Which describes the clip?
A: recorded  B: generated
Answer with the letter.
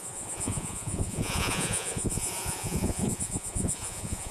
B